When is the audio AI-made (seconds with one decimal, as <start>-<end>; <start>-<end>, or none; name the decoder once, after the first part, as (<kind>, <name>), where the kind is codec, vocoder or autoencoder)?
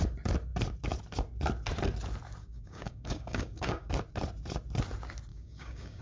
2.4-3.9 (codec, DAC); 5.3-6.0